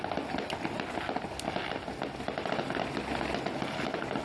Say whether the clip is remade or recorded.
recorded